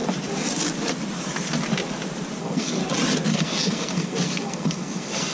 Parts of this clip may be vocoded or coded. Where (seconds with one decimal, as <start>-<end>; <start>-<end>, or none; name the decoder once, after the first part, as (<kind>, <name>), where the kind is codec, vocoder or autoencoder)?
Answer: 2.4-2.8 (codec, SNAC); 3.3-5.3